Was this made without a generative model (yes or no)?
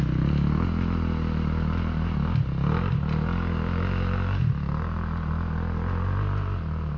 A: yes